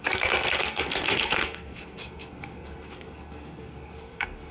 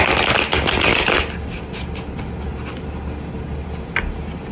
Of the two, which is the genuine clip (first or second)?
second